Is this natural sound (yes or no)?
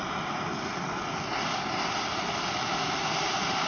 no